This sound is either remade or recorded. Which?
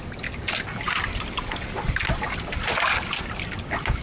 recorded